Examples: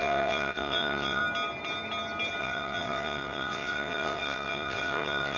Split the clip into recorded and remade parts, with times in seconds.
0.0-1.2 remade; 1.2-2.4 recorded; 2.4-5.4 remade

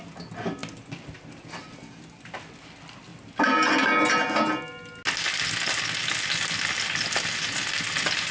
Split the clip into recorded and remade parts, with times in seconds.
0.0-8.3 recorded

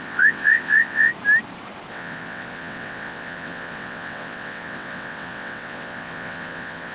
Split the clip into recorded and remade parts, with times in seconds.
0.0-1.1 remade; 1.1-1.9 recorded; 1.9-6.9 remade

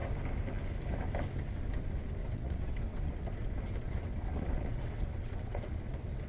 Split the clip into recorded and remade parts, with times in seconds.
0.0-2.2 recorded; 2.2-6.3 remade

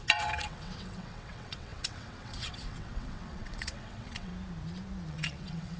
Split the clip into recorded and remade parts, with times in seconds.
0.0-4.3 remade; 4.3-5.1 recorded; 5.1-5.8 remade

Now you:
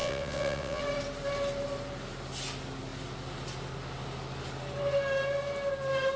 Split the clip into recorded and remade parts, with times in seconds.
0.0-0.8 remade; 0.8-6.2 recorded